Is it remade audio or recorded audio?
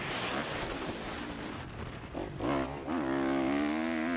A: recorded